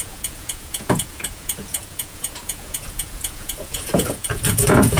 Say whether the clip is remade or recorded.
remade